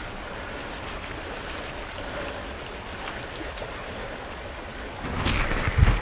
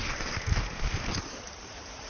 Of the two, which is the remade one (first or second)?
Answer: second